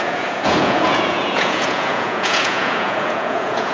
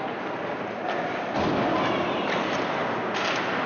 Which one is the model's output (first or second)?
first